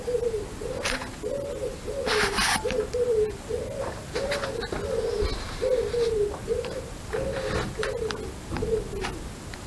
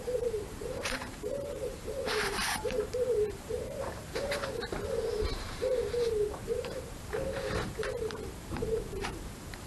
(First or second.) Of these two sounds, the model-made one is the second